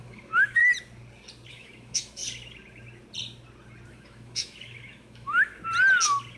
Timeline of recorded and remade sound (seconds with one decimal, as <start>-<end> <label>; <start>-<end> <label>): 0.0-0.6 remade; 0.6-1.5 recorded; 1.5-2.2 remade; 2.2-3.9 recorded; 3.9-5.5 remade; 5.5-6.4 recorded